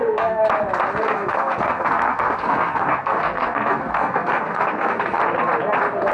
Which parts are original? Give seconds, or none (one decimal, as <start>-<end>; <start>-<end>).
0.4-1.0; 5.2-6.1